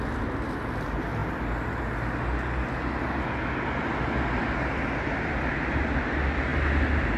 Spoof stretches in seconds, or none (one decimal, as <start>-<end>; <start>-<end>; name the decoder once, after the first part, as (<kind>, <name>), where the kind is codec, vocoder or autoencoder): none